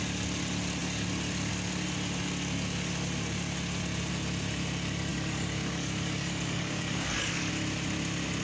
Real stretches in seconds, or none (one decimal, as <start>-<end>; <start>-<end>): 0.0-5.1; 7.5-8.4